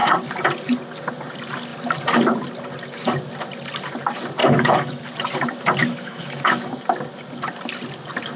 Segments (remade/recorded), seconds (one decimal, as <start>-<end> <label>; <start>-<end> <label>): 0.0-4.4 recorded; 4.4-5.0 remade; 5.0-5.8 recorded; 5.8-6.8 remade; 6.8-8.4 recorded